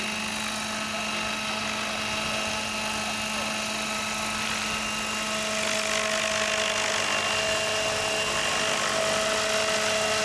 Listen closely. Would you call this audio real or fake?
real